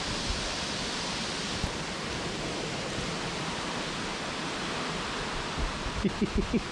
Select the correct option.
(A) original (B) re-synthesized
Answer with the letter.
A